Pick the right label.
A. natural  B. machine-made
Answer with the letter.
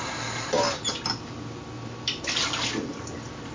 A